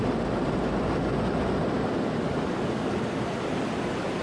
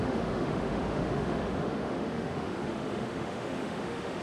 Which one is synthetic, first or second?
second